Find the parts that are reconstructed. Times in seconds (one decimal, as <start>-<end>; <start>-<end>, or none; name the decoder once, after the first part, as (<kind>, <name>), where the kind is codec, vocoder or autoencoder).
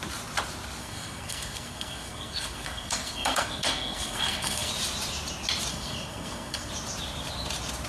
0.8-4.7 (codec, SNAC); 5.7-6.7